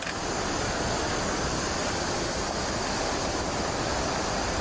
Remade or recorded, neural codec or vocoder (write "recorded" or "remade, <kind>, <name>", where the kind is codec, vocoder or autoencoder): recorded